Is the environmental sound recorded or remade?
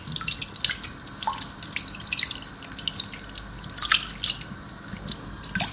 recorded